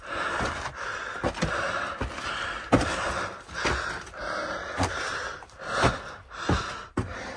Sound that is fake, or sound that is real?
real